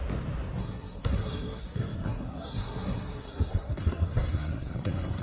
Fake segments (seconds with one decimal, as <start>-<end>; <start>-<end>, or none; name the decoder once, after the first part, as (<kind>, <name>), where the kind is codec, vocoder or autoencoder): 0.6-5.2 (codec, SNAC)